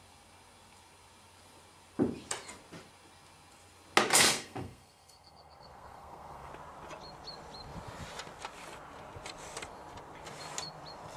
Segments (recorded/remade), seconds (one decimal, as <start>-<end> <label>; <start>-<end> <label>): 0.0-4.1 recorded; 4.1-6.5 remade; 6.5-11.2 recorded